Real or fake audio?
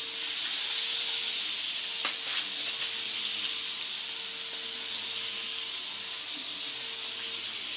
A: real